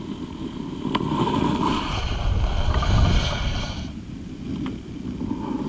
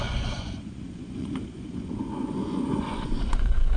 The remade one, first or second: second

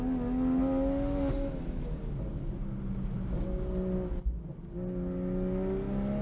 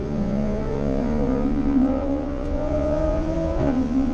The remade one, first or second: second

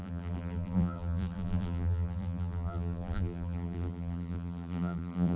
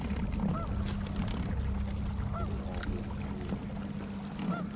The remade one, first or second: first